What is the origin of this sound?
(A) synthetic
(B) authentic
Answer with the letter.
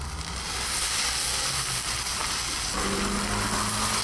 B